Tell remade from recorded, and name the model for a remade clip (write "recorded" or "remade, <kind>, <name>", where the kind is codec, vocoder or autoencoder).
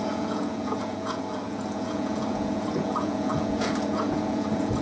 remade, vocoder, Vocos